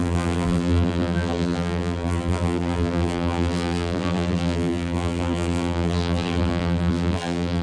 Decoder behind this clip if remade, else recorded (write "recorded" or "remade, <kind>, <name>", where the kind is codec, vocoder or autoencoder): remade, vocoder, BigVGAN v2